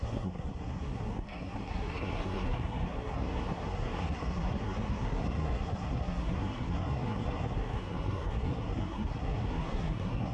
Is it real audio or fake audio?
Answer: fake